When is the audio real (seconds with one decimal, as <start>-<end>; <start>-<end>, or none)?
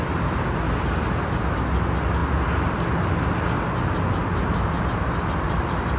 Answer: 0.0-6.0